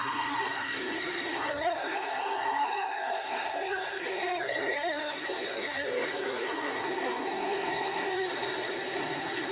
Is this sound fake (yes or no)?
yes